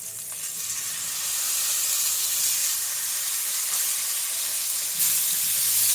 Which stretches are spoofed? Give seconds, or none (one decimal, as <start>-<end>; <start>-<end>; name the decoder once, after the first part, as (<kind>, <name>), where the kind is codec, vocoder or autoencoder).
2.6-3.5 (vocoder, BigVGAN v2)